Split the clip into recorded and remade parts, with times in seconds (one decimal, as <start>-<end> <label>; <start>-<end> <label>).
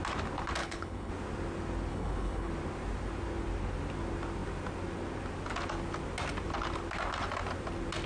0.0-0.6 recorded; 0.6-1.1 remade; 1.1-1.9 recorded; 1.9-2.5 remade; 2.5-8.1 recorded